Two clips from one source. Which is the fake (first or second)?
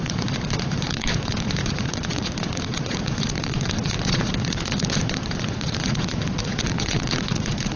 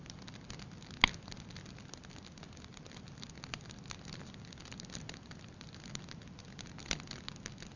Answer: first